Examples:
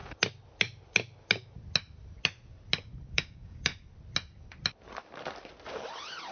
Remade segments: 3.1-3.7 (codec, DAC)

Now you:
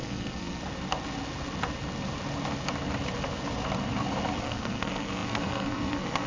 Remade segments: 0.0-0.6 (codec, SNAC); 4.4-6.3

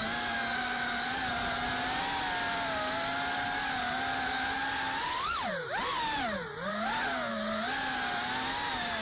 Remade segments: none

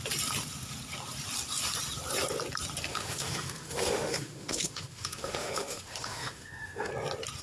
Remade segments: 2.9-6.9 (autoencoder, DAC-VAE)

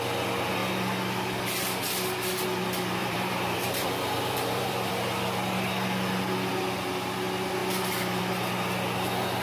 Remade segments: 3.0-4.9 (vocoder, BigVGAN v2)

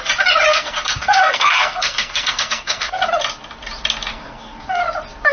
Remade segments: 0.5-3.0 (codec, SNAC); 4.1-4.8

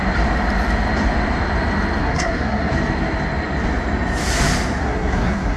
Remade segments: 2.0-2.7 (codec, SNAC); 4.8-5.6